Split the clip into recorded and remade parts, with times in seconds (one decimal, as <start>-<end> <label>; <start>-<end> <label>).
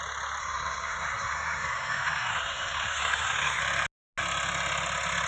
0.0-0.4 recorded; 0.4-3.6 remade; 3.6-5.3 recorded